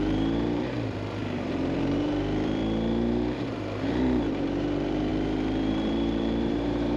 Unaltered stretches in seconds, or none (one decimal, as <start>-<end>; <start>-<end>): 2.6-3.4